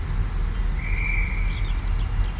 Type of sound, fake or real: real